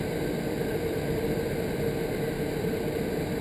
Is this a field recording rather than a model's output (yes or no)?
yes